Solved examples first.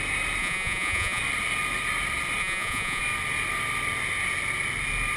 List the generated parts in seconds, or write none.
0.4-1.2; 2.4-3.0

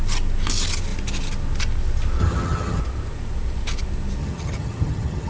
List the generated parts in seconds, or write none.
2.2-2.8; 4.2-5.3

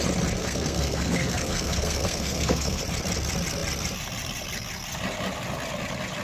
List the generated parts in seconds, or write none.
0.4-2.8

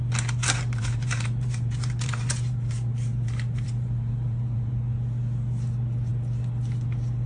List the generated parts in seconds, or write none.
0.4-4.8

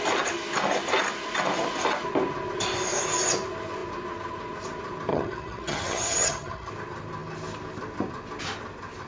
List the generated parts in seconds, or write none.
5.1-6.7

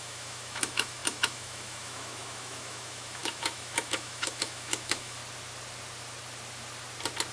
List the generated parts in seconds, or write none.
0.0-5.2

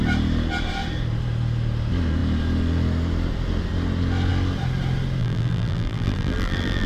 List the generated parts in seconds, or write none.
5.2-6.9